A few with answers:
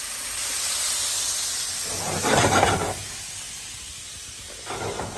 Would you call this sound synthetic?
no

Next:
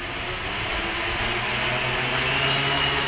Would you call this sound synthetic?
no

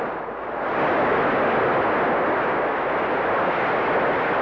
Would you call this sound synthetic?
no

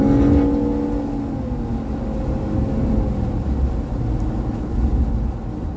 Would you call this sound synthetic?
no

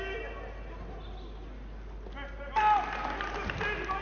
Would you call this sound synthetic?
no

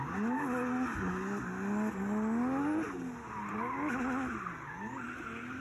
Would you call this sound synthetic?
no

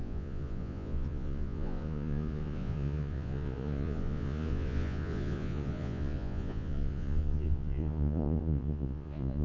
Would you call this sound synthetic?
yes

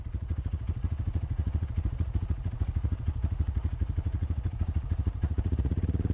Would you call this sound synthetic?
yes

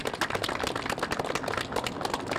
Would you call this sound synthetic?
no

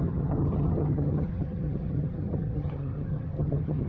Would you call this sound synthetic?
yes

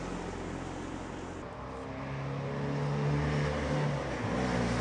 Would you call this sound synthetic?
no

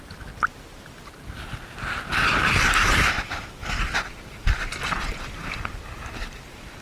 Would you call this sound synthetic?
no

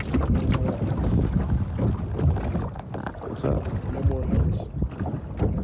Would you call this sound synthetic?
no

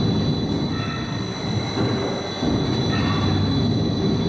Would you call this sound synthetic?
no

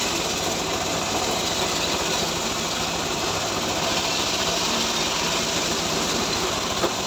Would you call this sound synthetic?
no